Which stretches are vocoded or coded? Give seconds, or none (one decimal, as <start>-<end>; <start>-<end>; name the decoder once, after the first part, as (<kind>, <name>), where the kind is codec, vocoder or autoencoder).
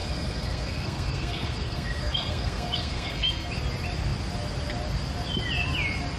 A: 0.0-3.5 (codec, SNAC)